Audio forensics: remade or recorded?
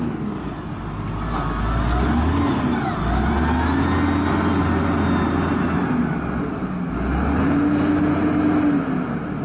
recorded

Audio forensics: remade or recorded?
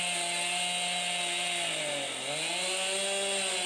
recorded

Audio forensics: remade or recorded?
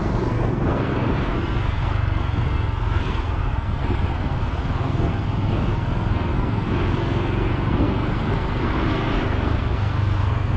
remade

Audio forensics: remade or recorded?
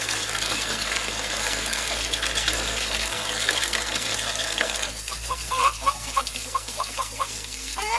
remade